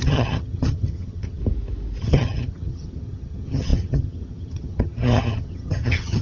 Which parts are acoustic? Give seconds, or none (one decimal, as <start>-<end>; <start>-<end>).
1.4-2.0